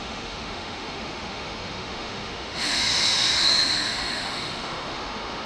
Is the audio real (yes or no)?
no